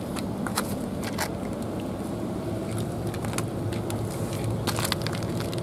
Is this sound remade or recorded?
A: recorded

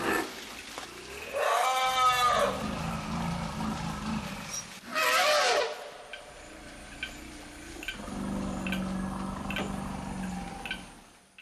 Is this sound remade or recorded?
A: recorded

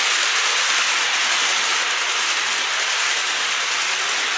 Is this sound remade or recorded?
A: recorded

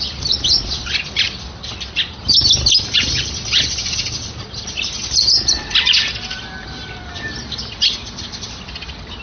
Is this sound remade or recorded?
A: recorded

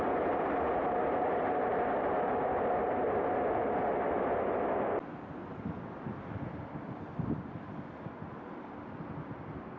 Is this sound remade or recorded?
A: recorded